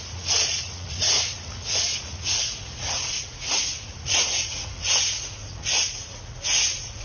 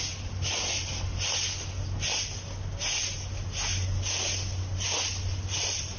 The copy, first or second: first